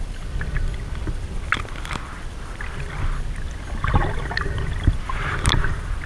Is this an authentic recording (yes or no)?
yes